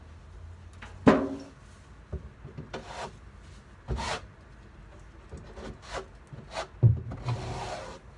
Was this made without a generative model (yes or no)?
yes